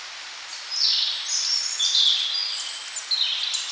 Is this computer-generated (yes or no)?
no